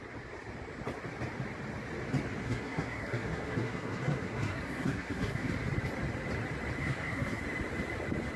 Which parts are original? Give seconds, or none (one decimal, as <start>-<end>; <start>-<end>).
0.0-2.4; 5.5-6.8; 7.4-8.4